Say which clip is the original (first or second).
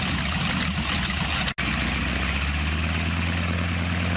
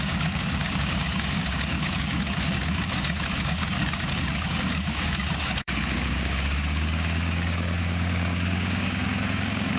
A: first